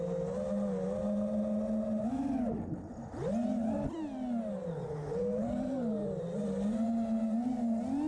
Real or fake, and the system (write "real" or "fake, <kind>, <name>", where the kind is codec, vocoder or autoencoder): real